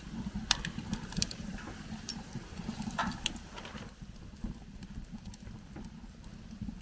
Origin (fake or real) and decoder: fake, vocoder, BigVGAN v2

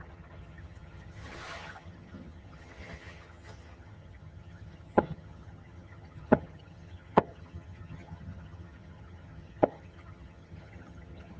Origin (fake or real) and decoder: fake, vocoder, HiFi-GAN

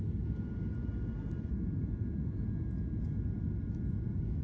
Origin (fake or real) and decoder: real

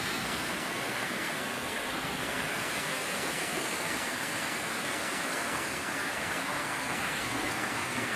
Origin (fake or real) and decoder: fake, codec, SNAC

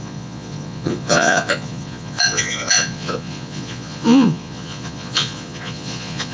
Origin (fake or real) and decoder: fake, vocoder, Vocos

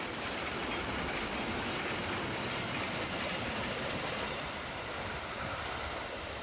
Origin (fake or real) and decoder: fake, vocoder, BigVGAN v2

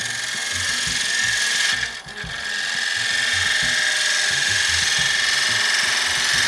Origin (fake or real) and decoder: real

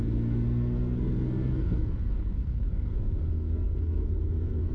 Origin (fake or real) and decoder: fake, codec, SNAC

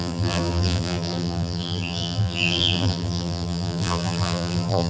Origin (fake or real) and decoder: fake, vocoder, BigVGAN v2